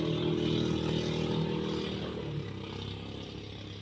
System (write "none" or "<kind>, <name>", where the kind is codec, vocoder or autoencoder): none